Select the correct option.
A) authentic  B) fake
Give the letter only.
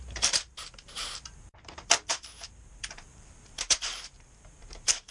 B